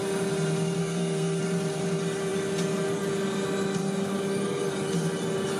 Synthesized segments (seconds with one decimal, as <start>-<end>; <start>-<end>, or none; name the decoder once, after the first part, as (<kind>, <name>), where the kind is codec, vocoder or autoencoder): 0.8-1.4 (codec, SNAC)